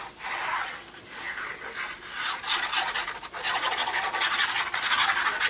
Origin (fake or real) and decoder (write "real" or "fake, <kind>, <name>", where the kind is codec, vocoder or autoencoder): real